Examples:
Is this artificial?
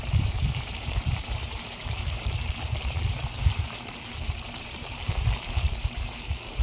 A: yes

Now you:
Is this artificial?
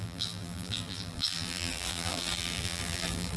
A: yes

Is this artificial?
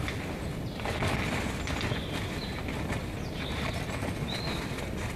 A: no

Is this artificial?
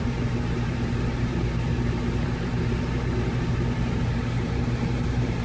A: yes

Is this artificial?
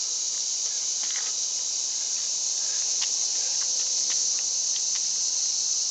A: yes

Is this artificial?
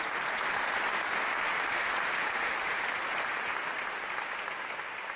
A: yes